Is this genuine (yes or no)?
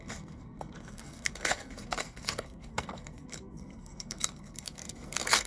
no